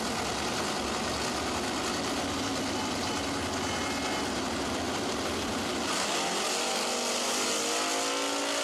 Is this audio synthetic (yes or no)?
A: no